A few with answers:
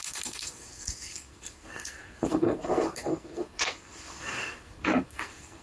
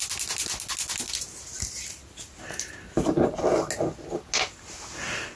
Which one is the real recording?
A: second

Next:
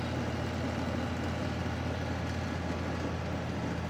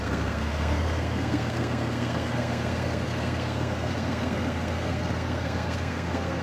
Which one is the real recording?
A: first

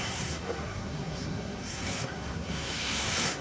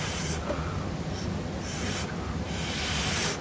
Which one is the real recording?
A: second